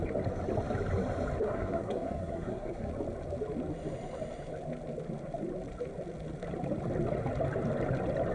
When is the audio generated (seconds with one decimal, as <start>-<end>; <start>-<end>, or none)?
1.4-2.9